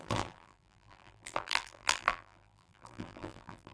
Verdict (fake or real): fake